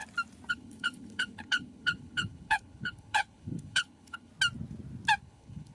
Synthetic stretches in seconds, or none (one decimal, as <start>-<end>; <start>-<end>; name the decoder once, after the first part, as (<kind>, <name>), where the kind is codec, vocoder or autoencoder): 0.5-4.3 (codec, HILCodec); 5.2-5.7